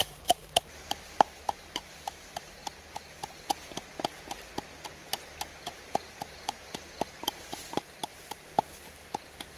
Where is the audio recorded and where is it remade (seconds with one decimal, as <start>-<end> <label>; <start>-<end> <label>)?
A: 0.0-2.6 remade; 2.6-5.6 recorded; 5.6-9.6 remade